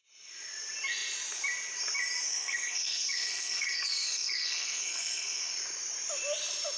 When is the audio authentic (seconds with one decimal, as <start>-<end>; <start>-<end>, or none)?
0.0-2.3; 5.5-6.8